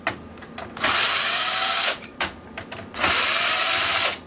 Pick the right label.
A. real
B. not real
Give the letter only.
A